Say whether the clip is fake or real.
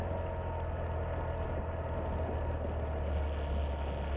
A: real